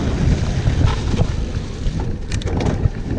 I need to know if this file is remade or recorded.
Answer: recorded